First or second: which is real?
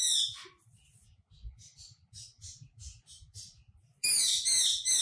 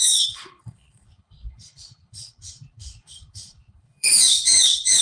first